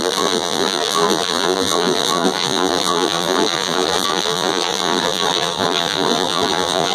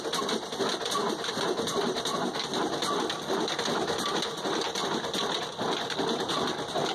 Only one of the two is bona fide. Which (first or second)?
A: second